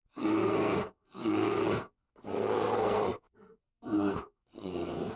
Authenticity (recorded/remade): remade